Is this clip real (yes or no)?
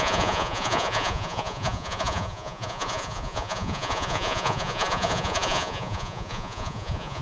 no